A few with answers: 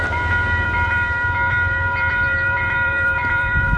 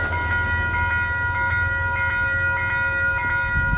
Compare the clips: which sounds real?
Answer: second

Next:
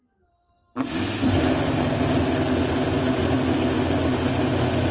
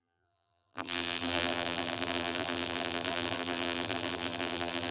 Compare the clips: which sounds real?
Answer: first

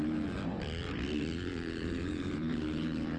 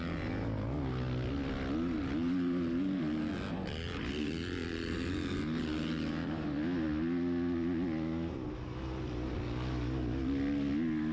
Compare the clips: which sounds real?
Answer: second